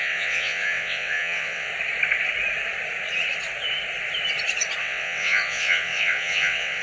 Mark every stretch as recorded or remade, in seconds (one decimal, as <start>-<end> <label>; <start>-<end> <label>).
0.0-1.7 remade; 1.7-4.8 recorded; 4.8-6.8 remade